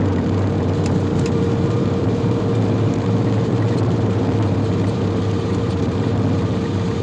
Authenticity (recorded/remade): remade